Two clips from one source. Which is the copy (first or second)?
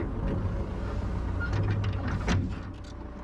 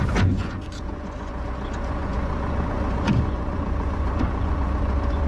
second